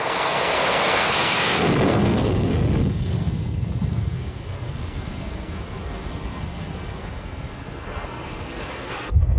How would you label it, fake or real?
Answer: fake